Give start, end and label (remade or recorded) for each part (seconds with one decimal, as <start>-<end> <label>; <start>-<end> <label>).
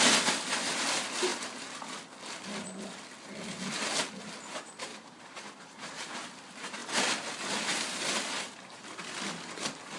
0.0-4.9 recorded; 4.9-6.1 remade; 6.1-10.0 recorded